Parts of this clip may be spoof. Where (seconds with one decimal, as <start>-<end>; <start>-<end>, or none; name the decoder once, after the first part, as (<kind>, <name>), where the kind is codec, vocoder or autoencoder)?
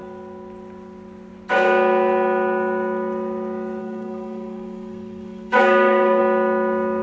3.8-6.2 (codec, SNAC)